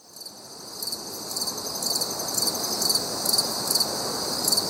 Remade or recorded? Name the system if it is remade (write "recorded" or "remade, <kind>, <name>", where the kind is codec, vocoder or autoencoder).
recorded